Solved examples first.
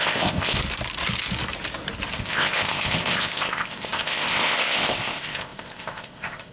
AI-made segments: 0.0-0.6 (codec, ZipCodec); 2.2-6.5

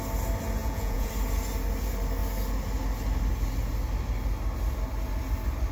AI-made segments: 0.6-1.1 (vocoder, Vocos)

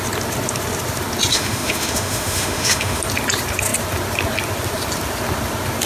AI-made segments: 1.3-3.0 (autoencoder, DAC-VAE)

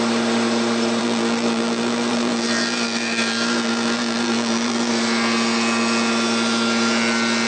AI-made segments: 1.0-4.9 (vocoder, BigVGAN v2)